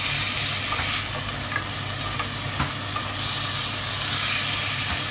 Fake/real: real